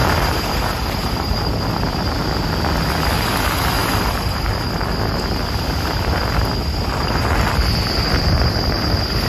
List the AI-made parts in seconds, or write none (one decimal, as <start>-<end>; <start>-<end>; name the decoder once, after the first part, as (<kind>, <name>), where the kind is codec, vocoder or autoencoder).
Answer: 0.0-1.4 (vocoder, BigVGAN v2)

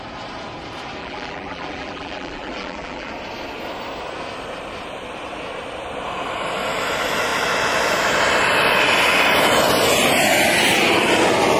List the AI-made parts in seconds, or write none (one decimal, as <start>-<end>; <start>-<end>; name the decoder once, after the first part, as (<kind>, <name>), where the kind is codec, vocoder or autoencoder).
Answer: 1.0-3.1 (vocoder, BigVGAN v2)

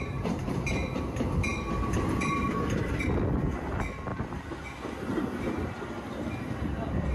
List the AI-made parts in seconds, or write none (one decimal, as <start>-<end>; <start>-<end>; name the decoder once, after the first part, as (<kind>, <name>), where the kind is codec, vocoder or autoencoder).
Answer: none

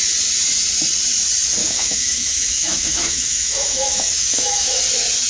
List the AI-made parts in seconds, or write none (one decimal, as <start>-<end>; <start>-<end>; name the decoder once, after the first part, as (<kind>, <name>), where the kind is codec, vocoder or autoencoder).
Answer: 1.6-4.8 (autoencoder, DAC-VAE)

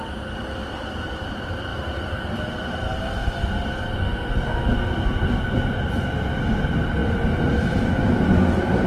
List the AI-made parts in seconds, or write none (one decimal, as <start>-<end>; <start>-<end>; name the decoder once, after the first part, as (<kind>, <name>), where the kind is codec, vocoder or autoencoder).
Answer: none

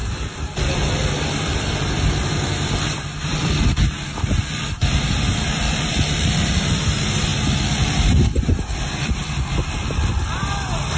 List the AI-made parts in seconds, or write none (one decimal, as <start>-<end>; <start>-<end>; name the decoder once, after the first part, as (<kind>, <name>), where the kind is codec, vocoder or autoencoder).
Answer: 0.0-7.3 (vocoder, BigVGAN v2); 7.9-11.0

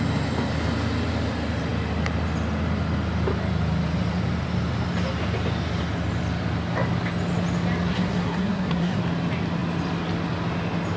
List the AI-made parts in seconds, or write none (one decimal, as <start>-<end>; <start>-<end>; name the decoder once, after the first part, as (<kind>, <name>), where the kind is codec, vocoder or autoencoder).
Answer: 7.9-9.0 (codec, SNAC)